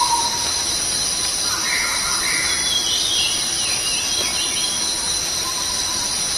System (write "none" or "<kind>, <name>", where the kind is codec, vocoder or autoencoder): none